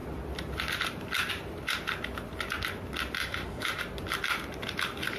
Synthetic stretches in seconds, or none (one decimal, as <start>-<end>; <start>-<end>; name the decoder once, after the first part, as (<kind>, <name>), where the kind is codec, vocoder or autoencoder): 3.2-3.8 (autoencoder, DAC-VAE)